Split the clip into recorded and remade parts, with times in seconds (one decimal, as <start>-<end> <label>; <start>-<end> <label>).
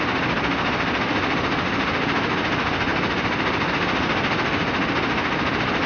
0.0-5.9 recorded